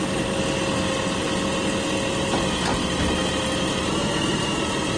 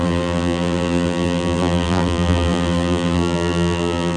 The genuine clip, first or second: first